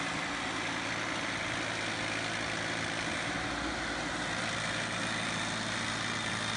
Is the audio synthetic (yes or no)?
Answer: no